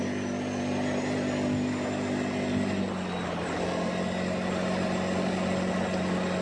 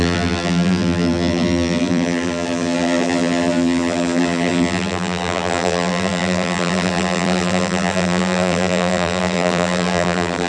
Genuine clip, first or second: first